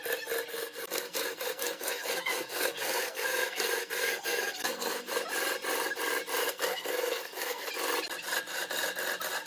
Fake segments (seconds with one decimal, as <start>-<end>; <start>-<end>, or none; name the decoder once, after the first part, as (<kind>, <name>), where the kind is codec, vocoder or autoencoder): 0.5-5.1 (codec, SNAC); 6.4-7.7